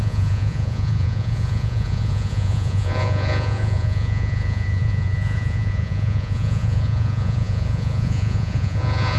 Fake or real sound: fake